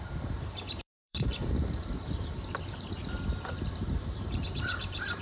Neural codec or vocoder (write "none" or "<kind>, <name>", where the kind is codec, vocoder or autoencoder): vocoder, BigVGAN v2